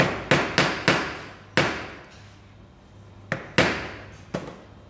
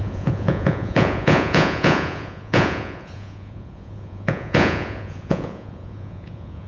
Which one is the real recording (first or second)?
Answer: first